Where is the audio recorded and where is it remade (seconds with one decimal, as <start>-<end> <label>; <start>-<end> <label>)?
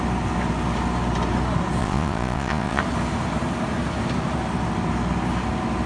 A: 0.0-1.8 recorded; 1.8-2.8 remade; 2.8-5.9 recorded